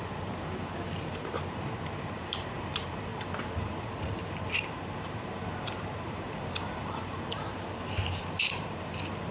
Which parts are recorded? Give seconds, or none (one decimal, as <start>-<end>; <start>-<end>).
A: none